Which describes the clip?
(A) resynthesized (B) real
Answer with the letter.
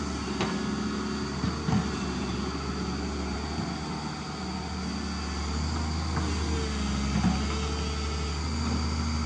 B